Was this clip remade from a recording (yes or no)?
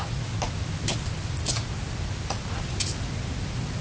no